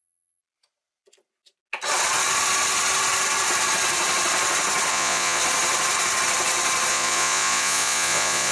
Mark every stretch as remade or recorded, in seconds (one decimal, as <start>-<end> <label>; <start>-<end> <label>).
0.0-0.4 remade; 0.4-4.9 recorded; 4.9-5.4 remade; 5.4-6.9 recorded; 6.9-8.5 remade